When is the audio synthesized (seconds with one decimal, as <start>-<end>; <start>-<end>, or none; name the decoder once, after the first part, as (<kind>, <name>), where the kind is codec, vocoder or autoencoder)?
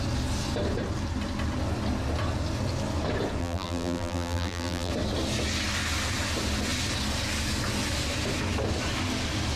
3.4-4.9 (vocoder, BigVGAN v2)